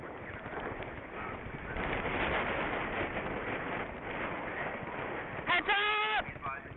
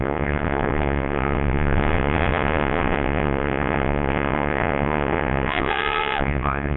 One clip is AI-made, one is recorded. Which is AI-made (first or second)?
second